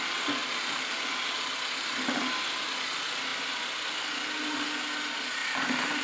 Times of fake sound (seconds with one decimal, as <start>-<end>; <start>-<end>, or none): 3.3-4.0